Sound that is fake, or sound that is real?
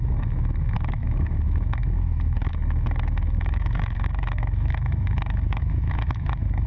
fake